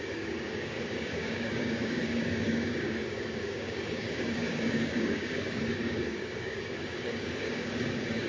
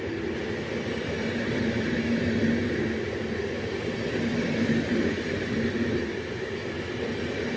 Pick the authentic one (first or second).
second